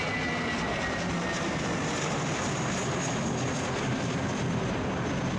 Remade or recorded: recorded